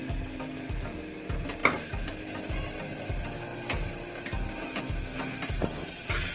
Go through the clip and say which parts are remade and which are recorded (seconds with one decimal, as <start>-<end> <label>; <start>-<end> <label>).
0.0-6.3 recorded